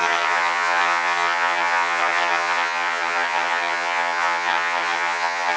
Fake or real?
fake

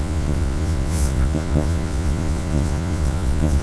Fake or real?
fake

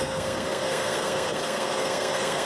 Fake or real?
fake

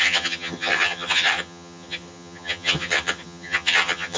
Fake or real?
fake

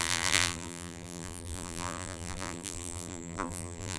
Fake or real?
fake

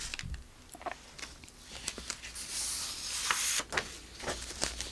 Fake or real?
real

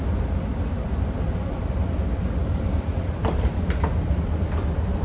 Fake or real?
fake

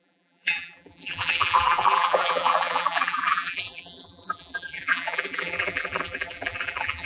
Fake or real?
fake